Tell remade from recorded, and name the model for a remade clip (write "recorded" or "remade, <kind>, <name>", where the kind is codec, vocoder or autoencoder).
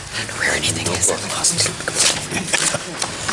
recorded